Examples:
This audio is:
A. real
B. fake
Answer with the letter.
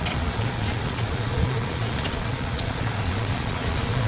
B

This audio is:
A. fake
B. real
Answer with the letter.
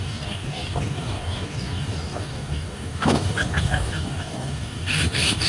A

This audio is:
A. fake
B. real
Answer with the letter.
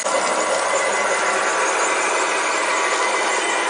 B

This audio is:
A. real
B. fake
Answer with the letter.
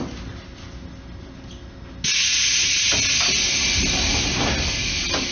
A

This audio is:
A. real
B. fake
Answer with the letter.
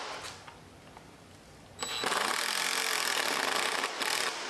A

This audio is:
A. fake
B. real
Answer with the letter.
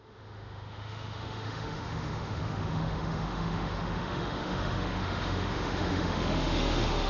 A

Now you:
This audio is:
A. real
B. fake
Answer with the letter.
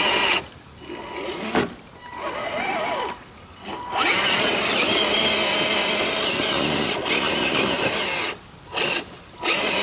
A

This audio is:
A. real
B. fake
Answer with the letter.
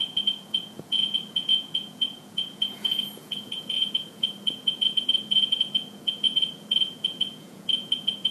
B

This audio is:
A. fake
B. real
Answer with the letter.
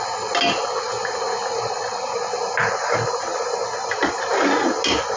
B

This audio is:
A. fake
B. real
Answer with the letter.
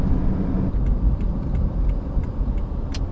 A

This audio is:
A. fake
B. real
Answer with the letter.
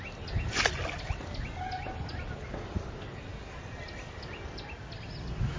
B